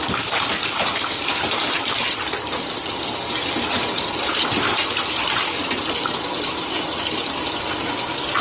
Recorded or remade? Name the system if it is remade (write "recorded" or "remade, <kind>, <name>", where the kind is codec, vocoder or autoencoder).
remade, vocoder, BigVGAN v2